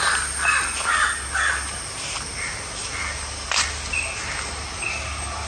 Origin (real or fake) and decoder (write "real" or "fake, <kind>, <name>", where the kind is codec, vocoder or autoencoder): real